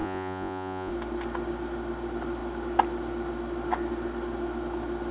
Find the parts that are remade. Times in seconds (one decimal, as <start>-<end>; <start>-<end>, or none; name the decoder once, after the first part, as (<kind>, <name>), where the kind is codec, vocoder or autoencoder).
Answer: 0.0-0.9 (vocoder, Vocos)